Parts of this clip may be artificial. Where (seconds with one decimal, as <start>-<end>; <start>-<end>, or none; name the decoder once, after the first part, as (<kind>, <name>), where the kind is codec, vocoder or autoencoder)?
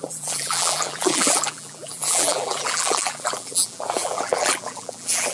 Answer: 0.0-5.3 (vocoder, BigVGAN v2)